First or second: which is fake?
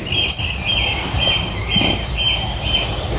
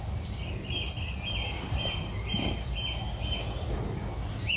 first